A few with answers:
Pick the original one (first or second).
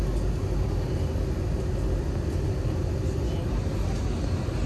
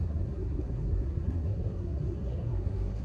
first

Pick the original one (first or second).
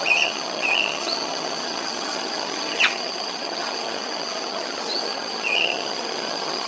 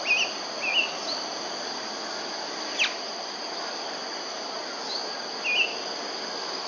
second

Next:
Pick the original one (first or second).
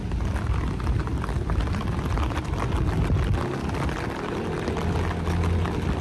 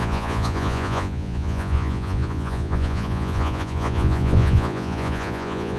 first